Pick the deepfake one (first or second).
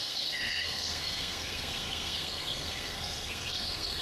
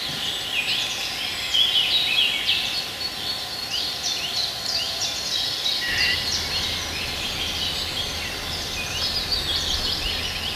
first